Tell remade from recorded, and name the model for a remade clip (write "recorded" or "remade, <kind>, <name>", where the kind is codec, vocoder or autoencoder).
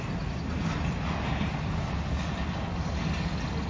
recorded